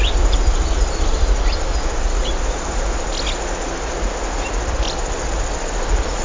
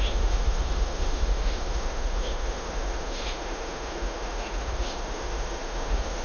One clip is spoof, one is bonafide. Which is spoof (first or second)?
second